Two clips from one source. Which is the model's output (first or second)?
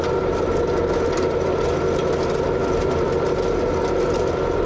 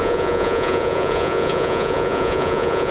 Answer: second